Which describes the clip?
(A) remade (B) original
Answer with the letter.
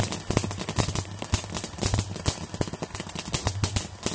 B